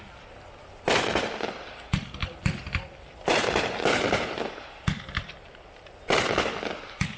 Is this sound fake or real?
real